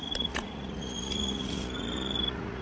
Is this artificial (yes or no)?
yes